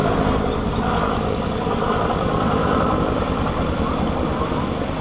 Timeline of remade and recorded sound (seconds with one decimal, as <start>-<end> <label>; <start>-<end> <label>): 0.0-5.0 recorded